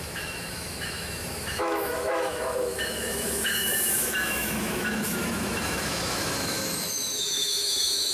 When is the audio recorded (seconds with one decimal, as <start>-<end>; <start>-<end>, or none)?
none